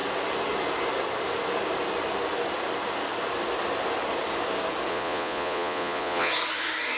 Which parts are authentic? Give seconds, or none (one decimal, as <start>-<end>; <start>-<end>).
0.0-4.9; 6.3-7.0